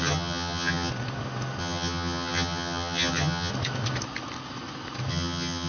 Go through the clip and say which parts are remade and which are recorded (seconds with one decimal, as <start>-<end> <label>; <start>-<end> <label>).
0.0-0.9 remade; 0.9-1.6 recorded; 1.6-3.5 remade; 3.5-5.1 recorded; 5.1-5.7 remade